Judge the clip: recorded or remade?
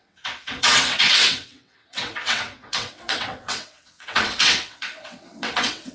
remade